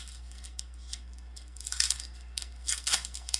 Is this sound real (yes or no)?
no